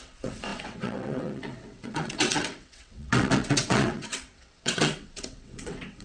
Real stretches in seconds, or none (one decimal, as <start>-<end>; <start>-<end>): none

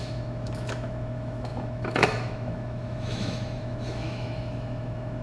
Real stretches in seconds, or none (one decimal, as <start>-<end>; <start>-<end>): none

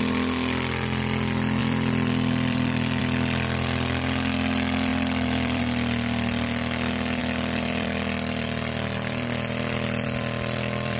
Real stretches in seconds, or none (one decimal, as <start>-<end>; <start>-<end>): 0.0-1.6; 3.0-4.9; 5.6-7.2

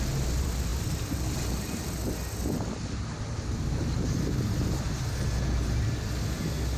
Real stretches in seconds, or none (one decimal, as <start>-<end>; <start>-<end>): 0.0-6.8

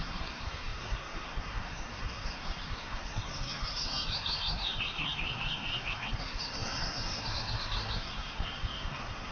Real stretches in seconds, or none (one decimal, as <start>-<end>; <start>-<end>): none

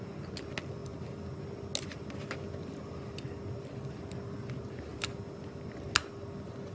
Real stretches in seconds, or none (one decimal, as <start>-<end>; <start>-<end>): 0.0-6.7

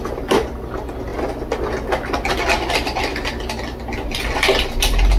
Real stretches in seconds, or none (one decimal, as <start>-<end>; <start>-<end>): 0.0-5.2